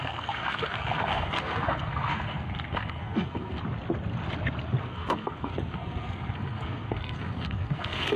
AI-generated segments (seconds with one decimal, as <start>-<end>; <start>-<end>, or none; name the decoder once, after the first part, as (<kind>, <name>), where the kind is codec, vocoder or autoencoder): 0.0-3.6 (codec, SNAC); 4.8-8.2